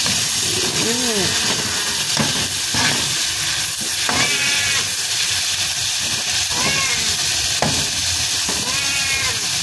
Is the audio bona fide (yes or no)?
yes